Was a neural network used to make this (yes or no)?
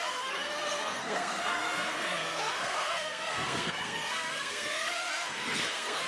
yes